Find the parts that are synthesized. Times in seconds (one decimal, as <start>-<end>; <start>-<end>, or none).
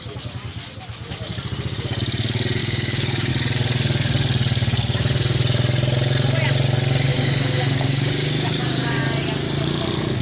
2.6-3.3; 7.1-9.0